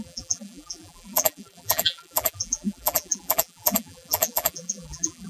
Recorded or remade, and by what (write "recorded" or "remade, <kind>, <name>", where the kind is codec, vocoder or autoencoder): remade, vocoder, BigVGAN v2